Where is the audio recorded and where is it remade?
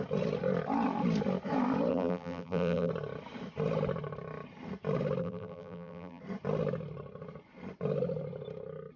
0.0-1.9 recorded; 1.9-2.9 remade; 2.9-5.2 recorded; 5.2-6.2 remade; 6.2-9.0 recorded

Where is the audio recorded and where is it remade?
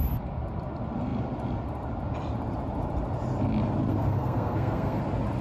0.0-3.9 recorded; 3.9-5.0 remade; 5.0-5.4 recorded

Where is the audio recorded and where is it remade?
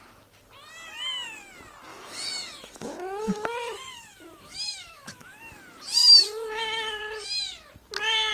0.0-1.9 recorded; 1.9-5.5 remade; 5.5-6.0 recorded; 6.0-7.0 remade; 7.0-8.3 recorded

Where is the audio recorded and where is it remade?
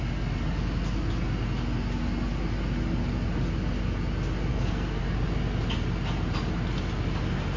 0.0-4.5 recorded; 4.5-5.0 remade; 5.0-7.6 recorded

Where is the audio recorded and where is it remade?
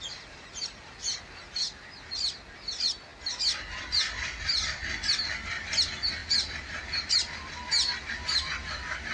0.0-9.1 recorded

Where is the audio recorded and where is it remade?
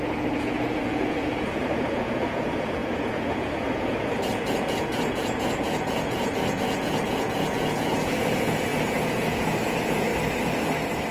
0.0-10.1 remade; 10.1-11.1 recorded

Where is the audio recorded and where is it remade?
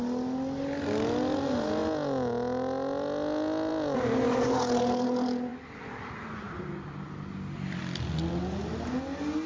0.0-9.5 recorded